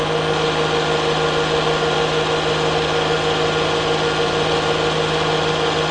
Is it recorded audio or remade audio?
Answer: recorded